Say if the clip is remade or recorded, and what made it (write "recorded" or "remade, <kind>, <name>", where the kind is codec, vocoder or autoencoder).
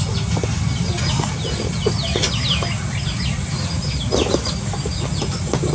recorded